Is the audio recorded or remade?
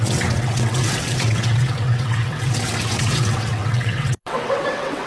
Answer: remade